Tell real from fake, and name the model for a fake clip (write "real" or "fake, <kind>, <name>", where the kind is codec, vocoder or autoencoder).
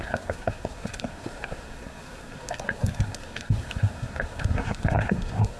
fake, codec, SNAC